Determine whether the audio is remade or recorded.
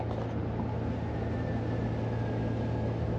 recorded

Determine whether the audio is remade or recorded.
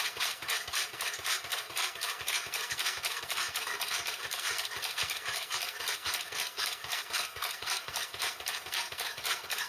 remade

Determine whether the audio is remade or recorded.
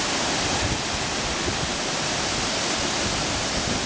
recorded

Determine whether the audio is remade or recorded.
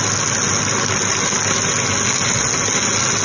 recorded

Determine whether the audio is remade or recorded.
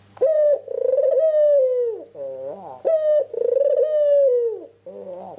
recorded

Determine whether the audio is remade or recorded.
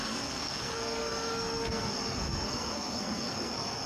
remade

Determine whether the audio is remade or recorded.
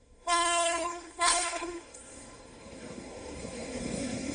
remade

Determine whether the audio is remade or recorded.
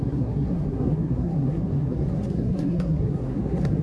remade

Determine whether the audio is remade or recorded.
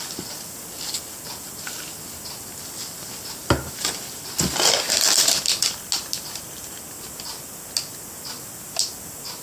recorded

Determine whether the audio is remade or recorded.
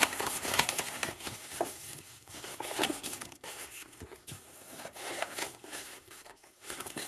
remade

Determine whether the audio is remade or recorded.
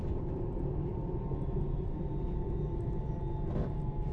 recorded